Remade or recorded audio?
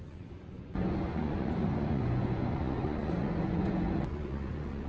remade